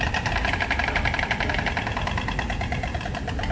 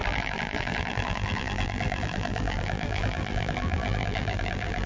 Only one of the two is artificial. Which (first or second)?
second